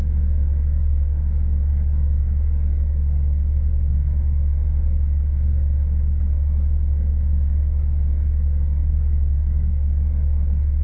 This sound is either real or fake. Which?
fake